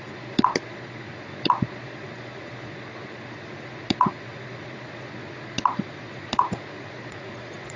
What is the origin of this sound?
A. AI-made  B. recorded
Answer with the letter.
A